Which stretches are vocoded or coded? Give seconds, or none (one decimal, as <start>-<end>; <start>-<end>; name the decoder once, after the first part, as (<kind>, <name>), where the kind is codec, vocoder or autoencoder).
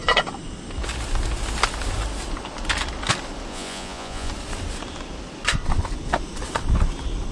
3.5-4.3 (vocoder, Vocos)